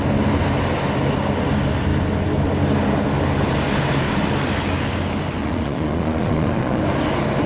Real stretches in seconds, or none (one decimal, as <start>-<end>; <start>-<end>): 0.0-5.4; 6.8-7.5